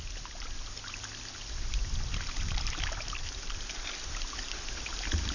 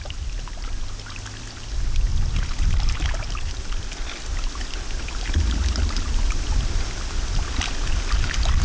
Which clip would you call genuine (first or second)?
second